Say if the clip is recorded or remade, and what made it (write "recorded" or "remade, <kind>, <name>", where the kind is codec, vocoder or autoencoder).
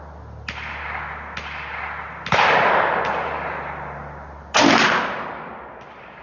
recorded